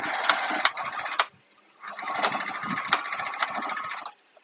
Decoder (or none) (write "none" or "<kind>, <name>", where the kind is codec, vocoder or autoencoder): none